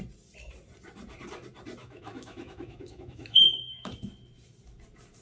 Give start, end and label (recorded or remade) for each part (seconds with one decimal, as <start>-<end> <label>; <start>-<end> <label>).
0.0-1.8 recorded; 1.8-3.9 remade; 3.9-5.2 recorded